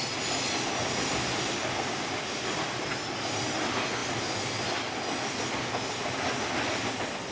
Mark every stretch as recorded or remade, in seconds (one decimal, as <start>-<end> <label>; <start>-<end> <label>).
0.0-7.3 recorded